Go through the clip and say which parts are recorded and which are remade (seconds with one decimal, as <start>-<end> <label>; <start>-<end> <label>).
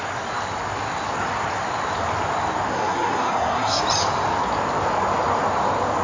0.0-2.7 recorded; 2.7-3.8 remade; 3.8-6.0 recorded